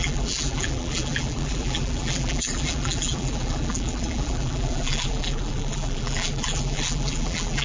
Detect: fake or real fake